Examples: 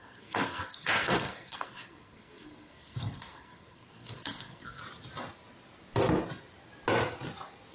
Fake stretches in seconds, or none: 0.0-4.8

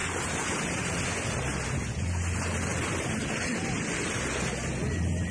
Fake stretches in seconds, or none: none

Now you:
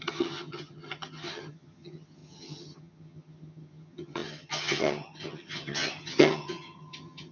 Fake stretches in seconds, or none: 0.0-7.3

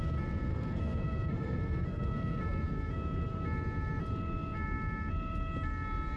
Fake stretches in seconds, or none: 0.5-2.9